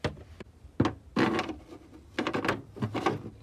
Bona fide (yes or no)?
yes